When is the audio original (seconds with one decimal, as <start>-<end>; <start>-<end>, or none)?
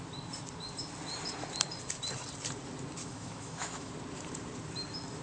0.0-3.0; 3.9-5.2